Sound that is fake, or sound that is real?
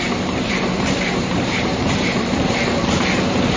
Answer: fake